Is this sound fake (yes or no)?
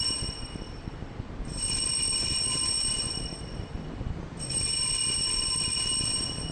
yes